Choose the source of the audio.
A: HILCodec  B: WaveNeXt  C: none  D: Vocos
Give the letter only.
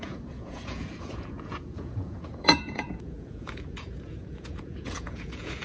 D